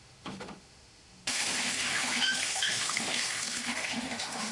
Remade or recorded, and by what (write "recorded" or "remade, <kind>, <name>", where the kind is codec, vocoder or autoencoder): remade, autoencoder, DAC-VAE